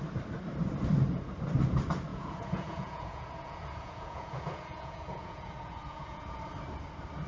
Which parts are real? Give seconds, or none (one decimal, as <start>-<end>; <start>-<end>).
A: 0.0-2.1; 6.4-7.3